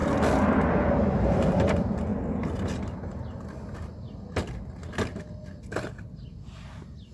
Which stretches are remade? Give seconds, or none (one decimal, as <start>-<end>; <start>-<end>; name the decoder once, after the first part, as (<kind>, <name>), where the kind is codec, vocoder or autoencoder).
none